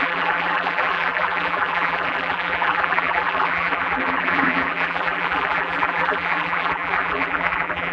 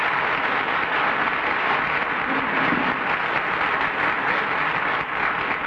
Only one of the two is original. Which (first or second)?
second